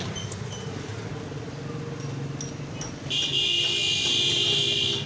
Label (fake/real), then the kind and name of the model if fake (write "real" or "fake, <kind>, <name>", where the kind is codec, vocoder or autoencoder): real